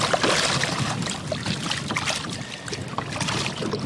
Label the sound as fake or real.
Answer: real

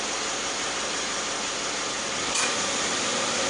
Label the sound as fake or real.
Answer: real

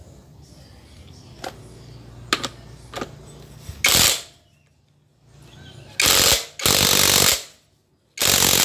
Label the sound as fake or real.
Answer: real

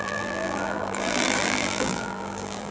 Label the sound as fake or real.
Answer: fake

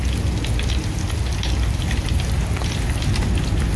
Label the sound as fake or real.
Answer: real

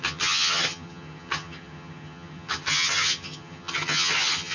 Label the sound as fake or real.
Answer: fake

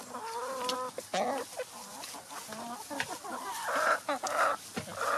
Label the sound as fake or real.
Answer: real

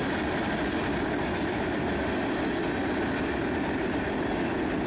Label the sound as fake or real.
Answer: real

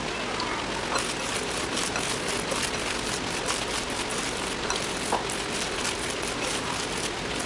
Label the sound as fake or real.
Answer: real